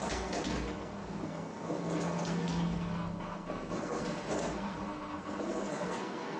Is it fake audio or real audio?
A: fake